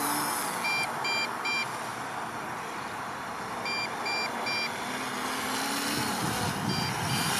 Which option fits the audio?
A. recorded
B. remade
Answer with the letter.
A